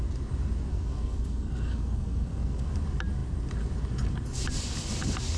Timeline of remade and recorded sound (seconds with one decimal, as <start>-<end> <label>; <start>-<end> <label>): 0.0-0.7 recorded; 0.7-2.7 remade; 2.7-5.4 recorded